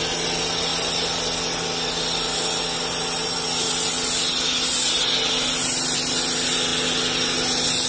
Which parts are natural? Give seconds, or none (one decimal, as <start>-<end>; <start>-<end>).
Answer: 0.0-7.9